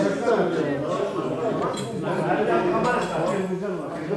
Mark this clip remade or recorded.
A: recorded